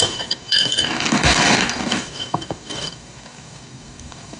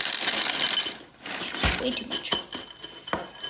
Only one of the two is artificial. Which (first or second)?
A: first